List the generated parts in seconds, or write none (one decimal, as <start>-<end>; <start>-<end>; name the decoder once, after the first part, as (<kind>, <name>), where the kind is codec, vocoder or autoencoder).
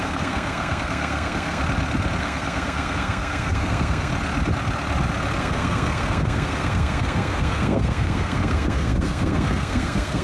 0.0-1.6 (codec, SNAC); 2.2-4.1; 5.4-10.2